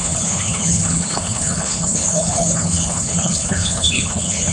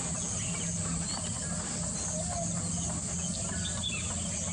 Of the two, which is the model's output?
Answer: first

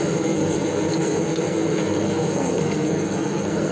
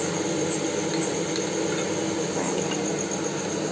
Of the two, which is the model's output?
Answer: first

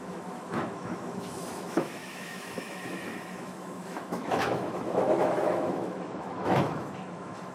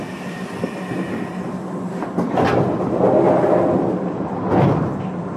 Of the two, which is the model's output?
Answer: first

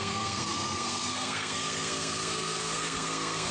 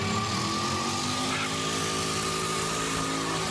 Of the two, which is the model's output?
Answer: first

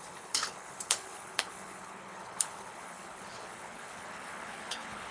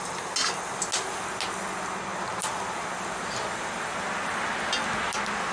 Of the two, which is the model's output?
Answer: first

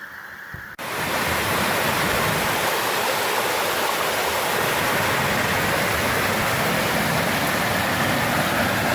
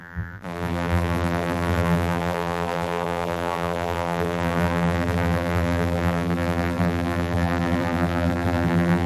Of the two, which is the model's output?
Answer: second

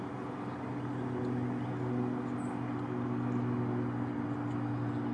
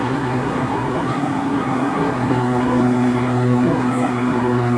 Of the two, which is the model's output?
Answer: second